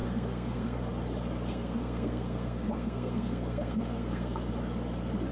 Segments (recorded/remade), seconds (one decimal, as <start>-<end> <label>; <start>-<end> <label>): 0.0-0.8 remade; 0.8-1.5 recorded; 1.5-4.5 remade; 4.5-5.3 recorded